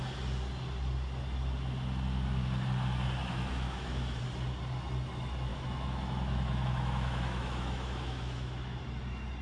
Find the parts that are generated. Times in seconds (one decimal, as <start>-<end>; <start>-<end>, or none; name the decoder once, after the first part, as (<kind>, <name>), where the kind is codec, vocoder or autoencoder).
3.2-4.2 (autoencoder, DAC-VAE); 5.5-8.8

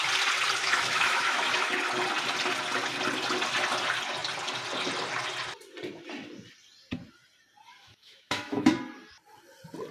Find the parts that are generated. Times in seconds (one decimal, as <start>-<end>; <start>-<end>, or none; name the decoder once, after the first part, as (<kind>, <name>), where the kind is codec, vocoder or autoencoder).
0.6-1.7 (autoencoder, DAC-VAE); 7.8-8.7

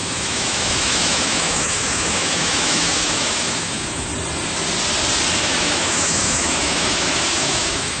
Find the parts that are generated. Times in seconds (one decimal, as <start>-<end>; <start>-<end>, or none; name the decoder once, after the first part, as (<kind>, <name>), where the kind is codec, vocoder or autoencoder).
0.0-4.1 (autoencoder, DAC-VAE); 5.4-8.0

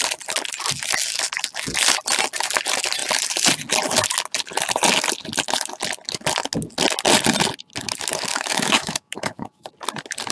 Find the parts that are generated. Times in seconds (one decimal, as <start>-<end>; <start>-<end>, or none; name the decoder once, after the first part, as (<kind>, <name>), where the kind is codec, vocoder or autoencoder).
8.3-9.7 (autoencoder, DAC-VAE)

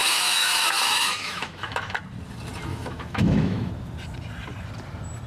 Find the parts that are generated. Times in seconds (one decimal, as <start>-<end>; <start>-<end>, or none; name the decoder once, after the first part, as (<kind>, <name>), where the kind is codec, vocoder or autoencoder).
0.0-2.0 (autoencoder, DAC-VAE); 2.7-3.7

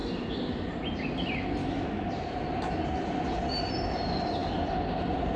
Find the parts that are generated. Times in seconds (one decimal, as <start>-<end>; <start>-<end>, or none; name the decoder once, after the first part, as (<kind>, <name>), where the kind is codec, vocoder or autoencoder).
1.6-2.1 (autoencoder, DAC-VAE)

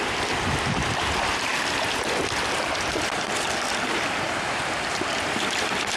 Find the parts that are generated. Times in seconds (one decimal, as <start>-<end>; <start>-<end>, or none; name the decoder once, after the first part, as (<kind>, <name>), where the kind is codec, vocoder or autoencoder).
none